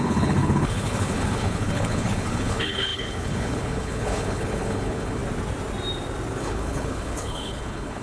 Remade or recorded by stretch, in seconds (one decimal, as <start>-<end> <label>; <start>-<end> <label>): 0.0-5.2 remade; 5.2-6.4 recorded; 6.4-8.0 remade